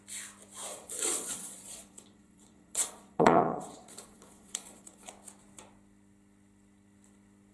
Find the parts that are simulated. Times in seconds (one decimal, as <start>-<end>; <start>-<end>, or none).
0.7-5.1

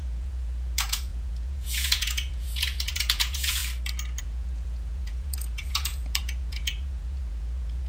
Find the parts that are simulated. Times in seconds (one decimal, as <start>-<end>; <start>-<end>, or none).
0.0-3.6; 4.2-7.9

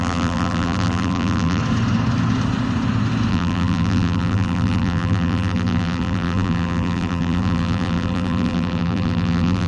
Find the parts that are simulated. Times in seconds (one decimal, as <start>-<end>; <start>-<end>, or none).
0.0-1.6; 3.3-9.7

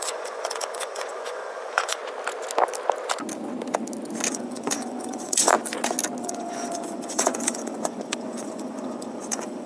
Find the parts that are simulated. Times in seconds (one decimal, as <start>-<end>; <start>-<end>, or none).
0.0-2.0; 4.3-5.5; 6.2-9.7

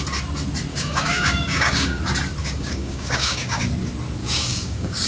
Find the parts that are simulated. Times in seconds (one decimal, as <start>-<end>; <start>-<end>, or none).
0.7-2.0; 2.4-3.6; 4.2-5.1

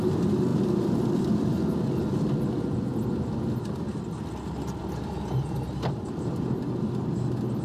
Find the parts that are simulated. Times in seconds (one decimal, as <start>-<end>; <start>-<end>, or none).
none